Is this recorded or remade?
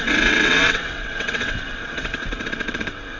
remade